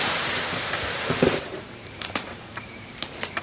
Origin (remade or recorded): remade